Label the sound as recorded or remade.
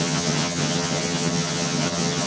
remade